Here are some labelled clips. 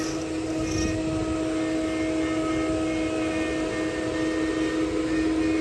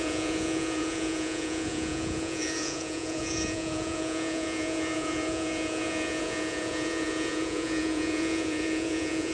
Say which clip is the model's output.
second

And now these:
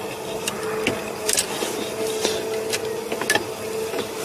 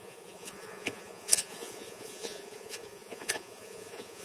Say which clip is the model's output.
second